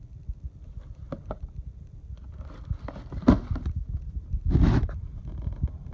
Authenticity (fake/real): real